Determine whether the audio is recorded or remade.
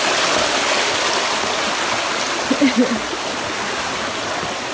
recorded